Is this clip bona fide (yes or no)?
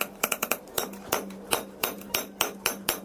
no